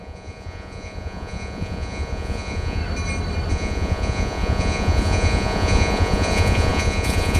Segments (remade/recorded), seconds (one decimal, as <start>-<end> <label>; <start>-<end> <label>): 0.0-2.8 remade; 2.8-3.5 recorded; 3.5-7.4 remade